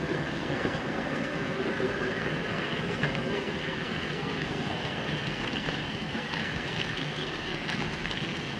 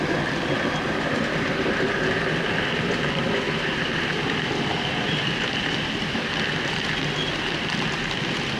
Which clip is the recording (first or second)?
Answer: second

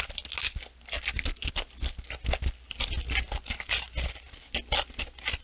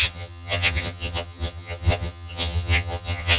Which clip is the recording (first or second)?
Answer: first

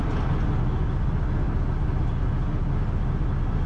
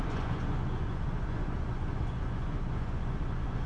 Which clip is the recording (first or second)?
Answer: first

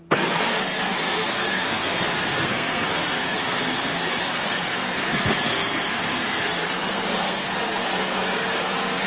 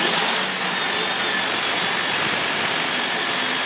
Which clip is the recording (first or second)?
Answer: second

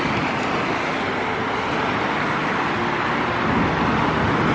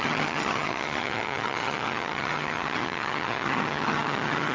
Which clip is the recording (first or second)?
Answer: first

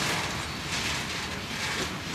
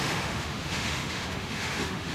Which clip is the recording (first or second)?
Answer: first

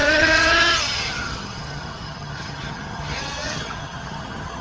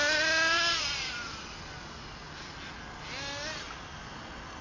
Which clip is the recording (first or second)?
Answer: second